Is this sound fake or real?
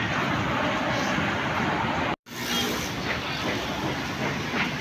real